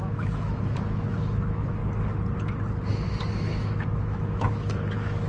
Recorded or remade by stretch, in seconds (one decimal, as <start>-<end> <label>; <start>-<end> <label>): 0.0-1.8 remade; 1.8-3.3 recorded; 3.3-5.3 remade